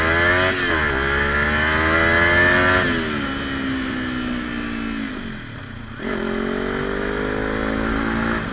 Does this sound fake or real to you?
real